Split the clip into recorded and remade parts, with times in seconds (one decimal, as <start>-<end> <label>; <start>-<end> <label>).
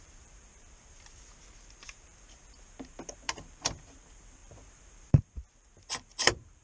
0.0-6.6 remade